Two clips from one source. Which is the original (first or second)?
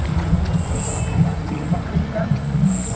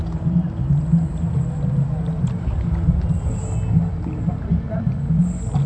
second